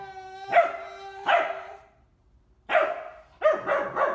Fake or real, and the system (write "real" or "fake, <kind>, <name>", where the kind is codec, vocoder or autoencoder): real